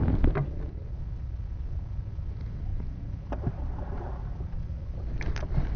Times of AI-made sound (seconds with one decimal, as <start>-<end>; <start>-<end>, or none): 2.7-3.3

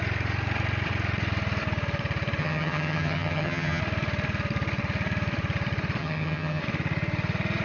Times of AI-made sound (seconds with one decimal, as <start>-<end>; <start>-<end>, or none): 2.4-3.8; 6.0-6.6

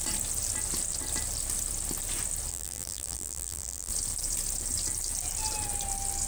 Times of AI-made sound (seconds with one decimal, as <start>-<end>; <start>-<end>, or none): 2.5-3.9

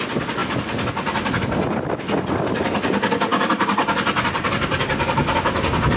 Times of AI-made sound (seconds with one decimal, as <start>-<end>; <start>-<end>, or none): none

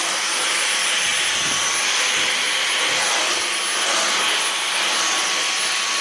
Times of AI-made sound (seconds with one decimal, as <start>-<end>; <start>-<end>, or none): none

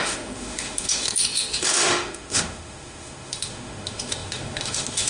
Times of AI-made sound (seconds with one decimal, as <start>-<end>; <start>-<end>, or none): 0.0-5.1